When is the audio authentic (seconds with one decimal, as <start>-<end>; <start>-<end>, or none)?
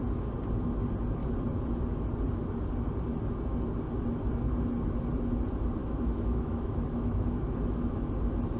0.0-5.8; 8.1-8.6